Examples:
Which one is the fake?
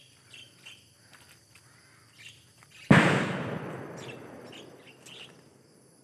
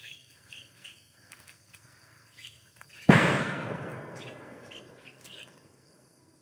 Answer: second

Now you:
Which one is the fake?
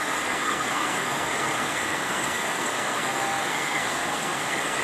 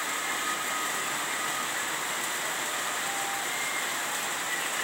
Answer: first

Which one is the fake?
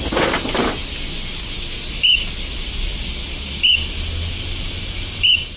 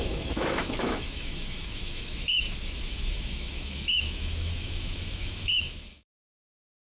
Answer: second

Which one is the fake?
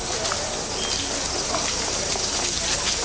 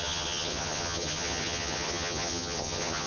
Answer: second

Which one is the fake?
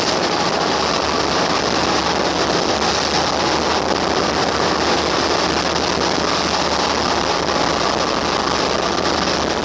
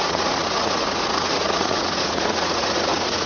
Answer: second